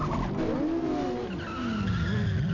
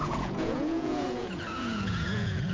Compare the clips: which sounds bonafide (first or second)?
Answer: first